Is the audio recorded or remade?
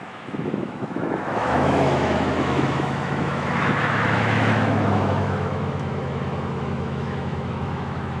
remade